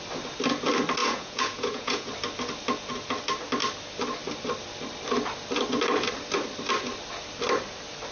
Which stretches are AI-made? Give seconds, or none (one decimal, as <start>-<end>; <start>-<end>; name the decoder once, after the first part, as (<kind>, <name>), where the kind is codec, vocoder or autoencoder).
1.0-2.1 (vocoder, Vocos)